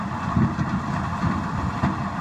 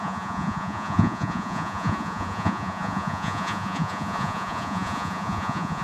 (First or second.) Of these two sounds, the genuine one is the first